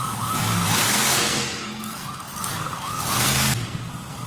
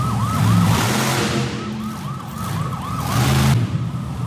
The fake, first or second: first